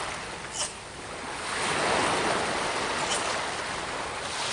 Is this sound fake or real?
real